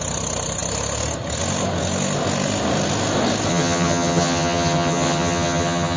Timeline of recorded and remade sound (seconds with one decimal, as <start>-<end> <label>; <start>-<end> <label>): 0.0-3.5 recorded; 3.5-6.0 remade